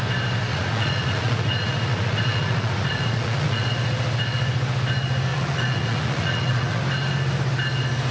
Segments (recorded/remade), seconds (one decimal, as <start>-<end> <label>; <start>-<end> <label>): 0.0-0.5 recorded; 0.5-3.7 remade; 3.7-5.3 recorded; 5.3-6.8 remade; 6.8-8.1 recorded